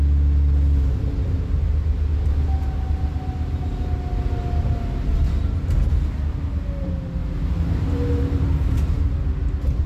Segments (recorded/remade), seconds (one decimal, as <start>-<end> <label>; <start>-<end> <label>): 0.0-7.2 recorded; 7.2-8.5 remade; 8.5-9.9 recorded